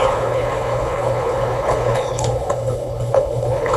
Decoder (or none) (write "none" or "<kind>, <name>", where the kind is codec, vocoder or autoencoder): codec, HILCodec